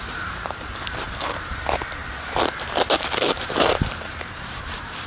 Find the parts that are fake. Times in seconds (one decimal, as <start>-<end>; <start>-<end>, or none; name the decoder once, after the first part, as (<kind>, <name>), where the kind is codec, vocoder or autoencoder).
0.0-2.0 (vocoder, BigVGAN v2); 3.3-5.1